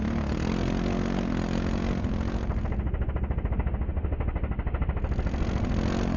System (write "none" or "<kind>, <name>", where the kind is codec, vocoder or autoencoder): none